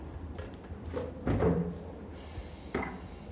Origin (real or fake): real